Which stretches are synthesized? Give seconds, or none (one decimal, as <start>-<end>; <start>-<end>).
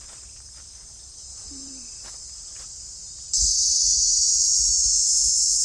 1.3-3.5